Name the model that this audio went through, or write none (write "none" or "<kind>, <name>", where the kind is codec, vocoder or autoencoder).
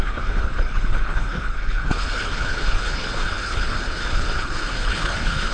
codec, HILCodec